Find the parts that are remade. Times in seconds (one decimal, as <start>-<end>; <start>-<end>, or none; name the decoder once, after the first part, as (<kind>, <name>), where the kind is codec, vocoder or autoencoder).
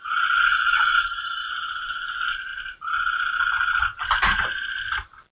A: 0.5-1.5 (codec, DAC)